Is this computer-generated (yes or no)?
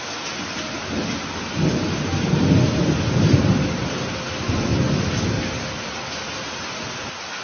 no